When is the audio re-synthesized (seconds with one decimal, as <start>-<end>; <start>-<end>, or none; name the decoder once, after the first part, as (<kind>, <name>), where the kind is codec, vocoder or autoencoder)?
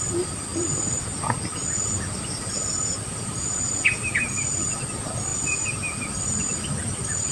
none